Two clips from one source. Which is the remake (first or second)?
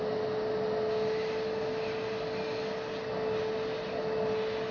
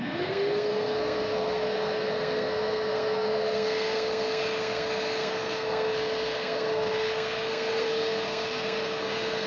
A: second